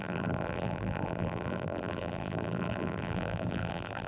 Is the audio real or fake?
fake